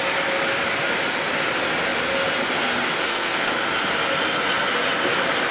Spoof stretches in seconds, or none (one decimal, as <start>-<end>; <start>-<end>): 3.0-3.5